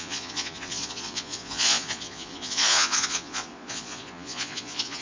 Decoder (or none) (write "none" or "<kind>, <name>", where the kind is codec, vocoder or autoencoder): vocoder, Vocos